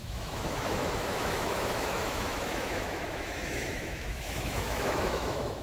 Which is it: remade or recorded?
remade